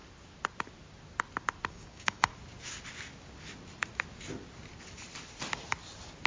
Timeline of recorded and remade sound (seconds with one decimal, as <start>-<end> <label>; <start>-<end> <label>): 0.0-1.7 recorded; 1.7-2.3 remade; 2.3-6.3 recorded